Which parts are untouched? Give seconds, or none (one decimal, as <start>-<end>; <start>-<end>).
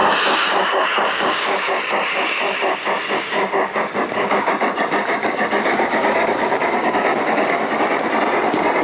4.5-5.2; 7.7-8.8